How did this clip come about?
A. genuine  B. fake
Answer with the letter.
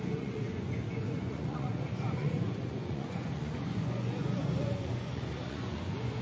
B